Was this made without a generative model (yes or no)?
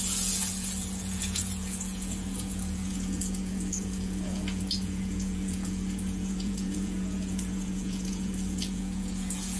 no